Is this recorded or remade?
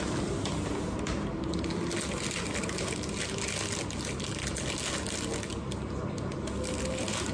recorded